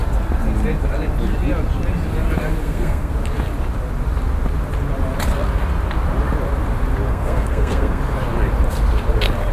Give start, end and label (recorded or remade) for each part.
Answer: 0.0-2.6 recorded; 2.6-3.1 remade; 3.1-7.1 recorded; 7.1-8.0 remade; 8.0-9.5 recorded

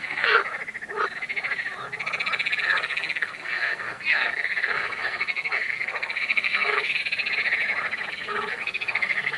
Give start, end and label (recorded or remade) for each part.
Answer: 0.0-0.4 remade; 0.4-2.6 recorded; 2.6-7.0 remade; 7.0-8.1 recorded; 8.1-9.4 remade

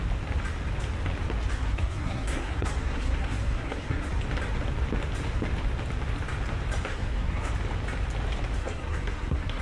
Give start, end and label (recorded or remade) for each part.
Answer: 0.0-1.5 recorded; 1.5-4.1 remade; 4.1-6.9 recorded; 6.9-7.5 remade; 7.5-8.6 recorded; 8.6-9.6 remade

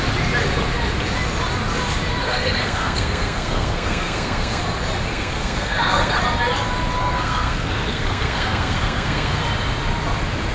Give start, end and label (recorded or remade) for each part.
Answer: 0.0-2.2 recorded; 2.2-4.6 remade; 4.6-5.1 recorded; 5.1-6.2 remade; 6.2-7.0 recorded; 7.0-9.4 remade; 9.4-10.5 recorded

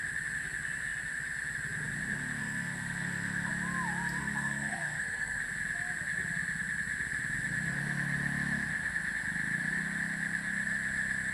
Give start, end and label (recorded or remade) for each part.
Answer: 0.0-2.4 recorded; 2.4-3.5 remade; 3.5-4.2 recorded; 4.2-5.4 remade; 5.4-11.3 recorded

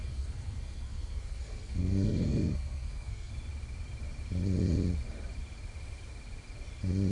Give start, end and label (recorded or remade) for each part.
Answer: 0.0-3.3 remade; 3.3-7.1 recorded

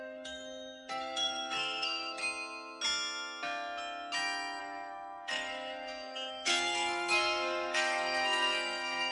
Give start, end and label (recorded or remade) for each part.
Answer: 0.0-2.2 remade; 2.2-4.6 recorded; 4.6-9.1 remade

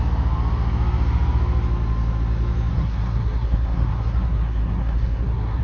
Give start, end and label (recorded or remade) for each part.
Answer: 0.0-2.7 recorded; 2.7-5.6 remade